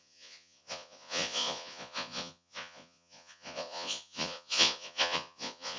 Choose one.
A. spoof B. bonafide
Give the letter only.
A